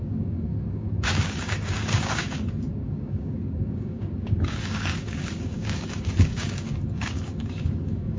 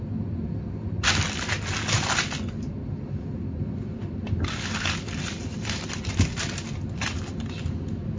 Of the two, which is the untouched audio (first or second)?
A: second